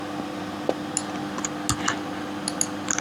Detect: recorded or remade recorded